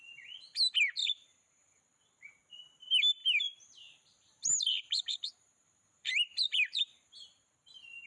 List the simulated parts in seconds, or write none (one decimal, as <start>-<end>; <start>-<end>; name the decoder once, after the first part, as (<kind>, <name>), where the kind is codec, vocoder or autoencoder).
1.0-1.8 (vocoder, BigVGAN v2); 3.2-7.5